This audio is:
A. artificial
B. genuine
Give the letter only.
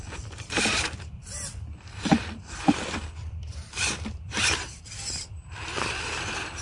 A